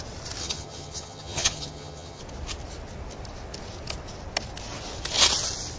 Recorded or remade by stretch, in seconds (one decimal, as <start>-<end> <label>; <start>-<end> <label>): 0.0-0.4 recorded; 0.4-2.2 remade; 2.2-5.8 recorded